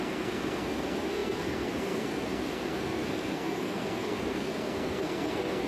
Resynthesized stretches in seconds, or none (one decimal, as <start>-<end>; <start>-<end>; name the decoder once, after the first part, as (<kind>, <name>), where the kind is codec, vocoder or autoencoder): 0.0-5.7 (codec, SNAC)